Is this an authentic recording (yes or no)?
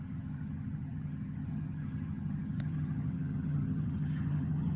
no